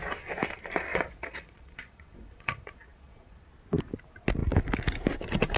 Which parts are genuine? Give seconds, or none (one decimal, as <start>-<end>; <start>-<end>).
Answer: 0.0-0.9; 3.5-5.6

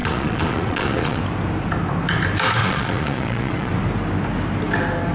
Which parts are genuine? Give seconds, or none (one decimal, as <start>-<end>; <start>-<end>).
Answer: 1.2-2.6; 3.7-5.1

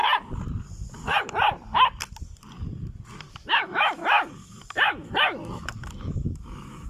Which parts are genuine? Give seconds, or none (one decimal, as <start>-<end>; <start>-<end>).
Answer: 0.0-3.3

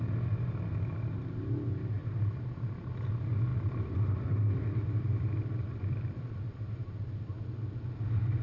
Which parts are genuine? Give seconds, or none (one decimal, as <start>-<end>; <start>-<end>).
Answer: 0.0-3.5; 7.7-8.4

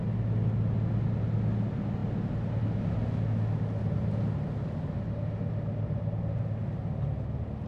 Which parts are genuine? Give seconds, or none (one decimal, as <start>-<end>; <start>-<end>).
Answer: 0.0-7.7

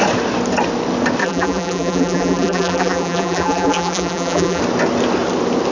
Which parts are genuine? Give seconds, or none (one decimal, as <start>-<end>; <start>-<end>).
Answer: 0.0-1.2; 4.6-5.7

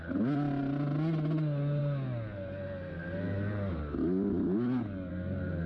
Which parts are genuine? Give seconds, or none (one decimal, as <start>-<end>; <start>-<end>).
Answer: 0.0-5.7

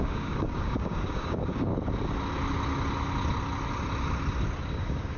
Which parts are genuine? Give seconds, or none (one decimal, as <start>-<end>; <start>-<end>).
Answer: 1.7-4.7